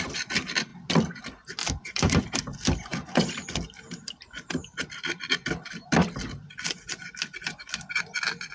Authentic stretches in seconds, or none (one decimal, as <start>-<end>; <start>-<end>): 0.0-1.6; 2.2-8.5